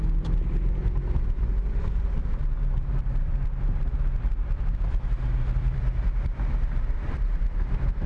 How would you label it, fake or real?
fake